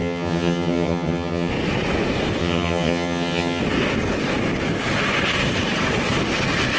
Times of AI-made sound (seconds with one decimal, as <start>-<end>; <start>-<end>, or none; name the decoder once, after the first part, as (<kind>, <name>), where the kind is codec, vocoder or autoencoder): 0.0-1.5 (vocoder, HiFi-GAN); 2.4-3.6